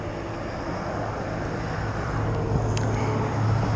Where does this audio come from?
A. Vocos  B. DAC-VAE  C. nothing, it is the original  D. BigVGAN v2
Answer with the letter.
C